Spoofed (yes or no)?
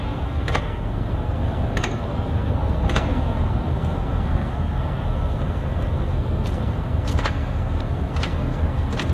yes